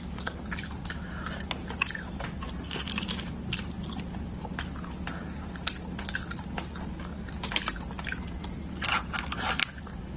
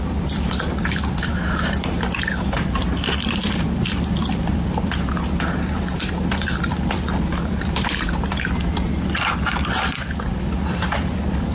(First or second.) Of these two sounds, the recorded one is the first